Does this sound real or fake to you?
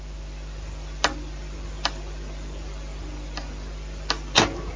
real